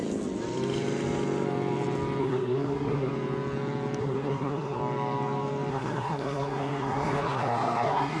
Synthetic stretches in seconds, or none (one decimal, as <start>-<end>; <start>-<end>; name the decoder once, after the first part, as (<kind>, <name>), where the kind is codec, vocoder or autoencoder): 2.2-3.1 (codec, SNAC); 4.0-4.8; 5.7-8.2